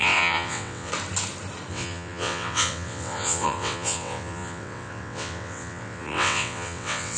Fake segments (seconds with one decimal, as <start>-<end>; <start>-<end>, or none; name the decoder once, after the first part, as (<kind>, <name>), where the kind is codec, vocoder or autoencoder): 0.0-0.9 (vocoder, WaveNeXt); 1.7-7.2